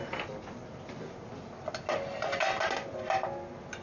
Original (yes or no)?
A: yes